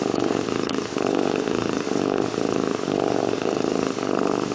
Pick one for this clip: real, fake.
fake